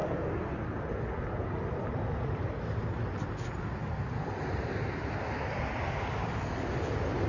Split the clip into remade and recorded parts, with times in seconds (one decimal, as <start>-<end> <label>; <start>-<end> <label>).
0.0-7.3 recorded